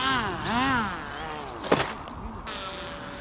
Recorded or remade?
recorded